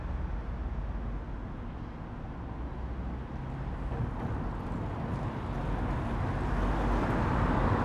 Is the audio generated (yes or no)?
no